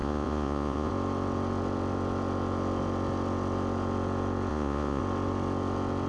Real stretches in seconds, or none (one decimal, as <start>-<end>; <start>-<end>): 0.9-4.5; 5.0-6.1